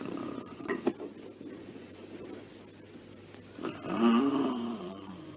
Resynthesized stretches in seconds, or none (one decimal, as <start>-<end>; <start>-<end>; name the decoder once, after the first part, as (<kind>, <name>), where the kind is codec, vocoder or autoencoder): 0.0-0.9 (vocoder, Vocos); 1.5-2.0; 4.8-5.4